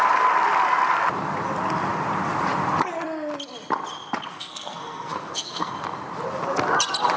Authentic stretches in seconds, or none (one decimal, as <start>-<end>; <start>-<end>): 0.0-4.3; 5.7-7.2

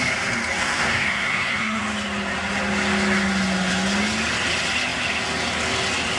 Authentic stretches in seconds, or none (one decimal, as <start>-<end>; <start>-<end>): 0.0-0.6; 1.8-6.2

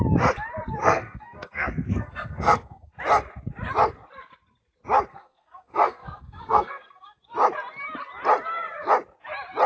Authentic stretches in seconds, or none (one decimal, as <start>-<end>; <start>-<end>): 0.0-0.8; 2.9-5.1; 7.2-9.7

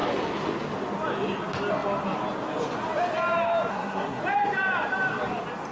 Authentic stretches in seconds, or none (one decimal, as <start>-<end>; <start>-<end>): 0.0-3.7; 4.2-5.7

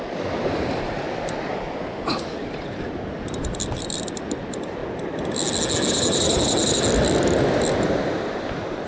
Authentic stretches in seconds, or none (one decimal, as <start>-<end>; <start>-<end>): 0.0-8.9

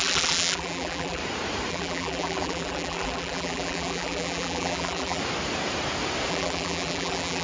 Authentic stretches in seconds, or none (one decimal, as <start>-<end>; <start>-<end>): 1.2-1.7; 5.2-6.3

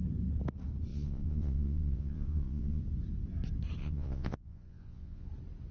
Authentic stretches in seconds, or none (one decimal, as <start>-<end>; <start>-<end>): 0.0-0.9; 2.8-3.8; 5.3-5.7

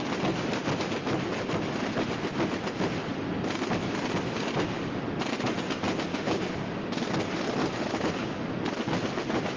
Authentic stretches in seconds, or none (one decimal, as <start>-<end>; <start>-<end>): 0.0-6.1; 7.0-7.6; 8.1-9.6